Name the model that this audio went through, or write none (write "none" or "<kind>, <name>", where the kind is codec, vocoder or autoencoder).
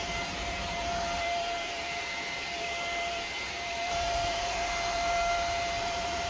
vocoder, BigVGAN v2